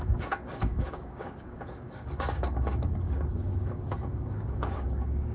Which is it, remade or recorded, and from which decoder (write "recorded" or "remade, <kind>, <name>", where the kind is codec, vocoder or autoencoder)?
remade, codec, DAC